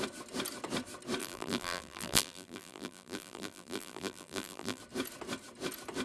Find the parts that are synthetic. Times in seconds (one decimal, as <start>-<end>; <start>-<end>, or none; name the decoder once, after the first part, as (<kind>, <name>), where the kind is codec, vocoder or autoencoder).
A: 1.2-4.8 (vocoder, BigVGAN v2)